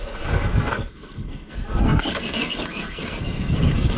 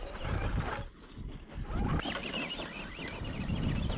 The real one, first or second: second